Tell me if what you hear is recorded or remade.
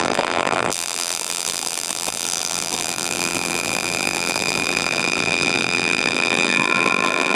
remade